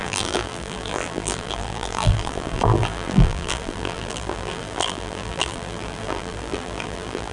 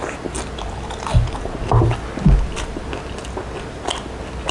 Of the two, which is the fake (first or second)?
first